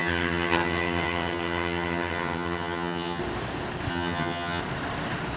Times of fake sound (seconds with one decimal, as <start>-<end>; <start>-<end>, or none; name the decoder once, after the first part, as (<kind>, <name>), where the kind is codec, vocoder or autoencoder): 0.0-3.2 (vocoder, HiFi-GAN); 3.9-4.6